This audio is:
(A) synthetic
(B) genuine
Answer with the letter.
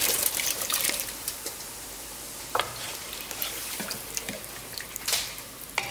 A